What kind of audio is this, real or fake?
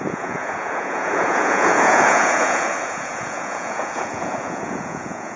fake